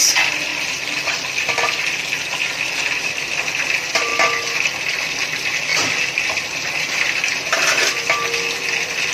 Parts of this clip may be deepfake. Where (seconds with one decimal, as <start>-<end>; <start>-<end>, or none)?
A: 0.5-2.0; 5.7-7.0